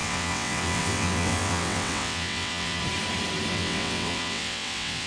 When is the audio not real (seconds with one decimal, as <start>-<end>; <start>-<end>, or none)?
0.0-2.8; 3.5-5.1